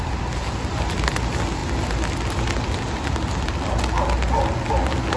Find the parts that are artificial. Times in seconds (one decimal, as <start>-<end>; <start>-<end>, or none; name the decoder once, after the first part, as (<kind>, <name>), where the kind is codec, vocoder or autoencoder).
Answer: none

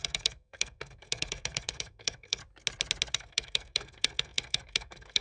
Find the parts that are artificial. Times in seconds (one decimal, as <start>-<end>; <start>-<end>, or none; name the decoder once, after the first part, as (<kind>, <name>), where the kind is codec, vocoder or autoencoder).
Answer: 0.0-2.4 (codec, SNAC); 3.1-5.2

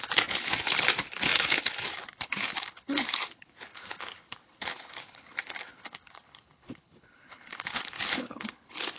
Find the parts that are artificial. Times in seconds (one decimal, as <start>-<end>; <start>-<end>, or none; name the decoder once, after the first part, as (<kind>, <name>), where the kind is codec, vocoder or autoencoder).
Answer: 0.0-9.0 (codec, HILCodec)

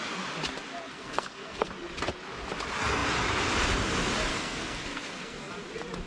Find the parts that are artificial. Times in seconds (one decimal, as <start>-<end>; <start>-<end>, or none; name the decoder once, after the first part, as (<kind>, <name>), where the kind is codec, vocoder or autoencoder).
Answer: 0.8-1.7 (codec, SNAC); 4.3-5.5